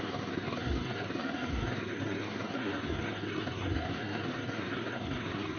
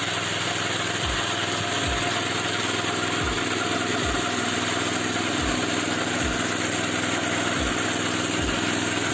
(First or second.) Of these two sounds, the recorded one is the second